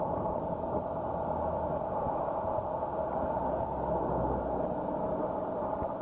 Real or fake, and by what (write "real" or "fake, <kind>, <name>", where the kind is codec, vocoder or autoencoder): real